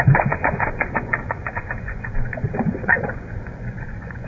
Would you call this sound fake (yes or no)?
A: yes